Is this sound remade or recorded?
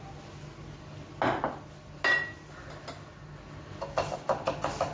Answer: recorded